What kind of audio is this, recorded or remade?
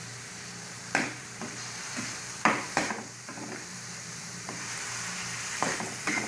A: remade